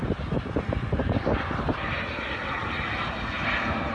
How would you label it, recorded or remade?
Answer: recorded